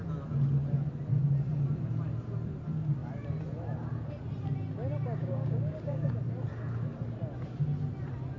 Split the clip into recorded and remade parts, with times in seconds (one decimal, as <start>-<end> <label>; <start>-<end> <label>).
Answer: 0.0-5.2 recorded; 5.2-6.2 remade; 6.2-8.4 recorded